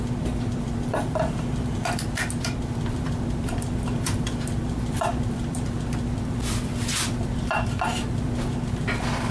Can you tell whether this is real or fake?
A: fake